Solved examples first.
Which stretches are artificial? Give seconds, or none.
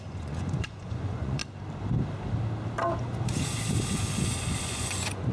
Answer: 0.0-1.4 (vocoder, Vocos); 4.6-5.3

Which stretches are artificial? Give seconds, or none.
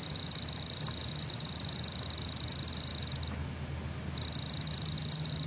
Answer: none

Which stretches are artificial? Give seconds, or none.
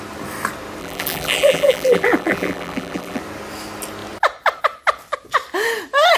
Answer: 0.8-3.2 (vocoder, BigVGAN v2)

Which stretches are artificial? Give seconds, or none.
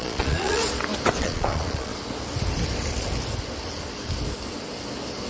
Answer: 0.0-0.6 (vocoder, Vocos); 1.2-1.9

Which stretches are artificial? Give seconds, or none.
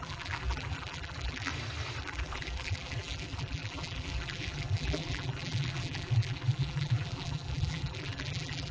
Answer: 0.0-1.5 (vocoder, BigVGAN v2); 2.0-8.7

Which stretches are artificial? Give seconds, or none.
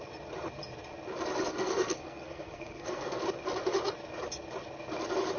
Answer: 1.5-3.2 (codec, SNAC)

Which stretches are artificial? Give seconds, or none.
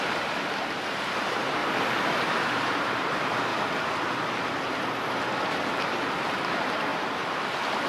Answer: 0.0-1.6 (vocoder, BigVGAN v2); 2.2-3.5; 5.5-7.9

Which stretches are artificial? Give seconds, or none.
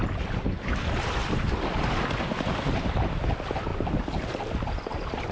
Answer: 1.2-1.9 (vocoder, BigVGAN v2); 3.7-4.8